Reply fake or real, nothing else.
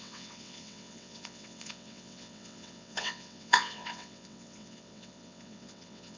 fake